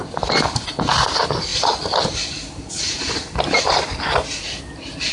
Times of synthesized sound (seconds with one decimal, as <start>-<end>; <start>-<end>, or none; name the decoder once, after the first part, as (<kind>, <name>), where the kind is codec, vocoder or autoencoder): none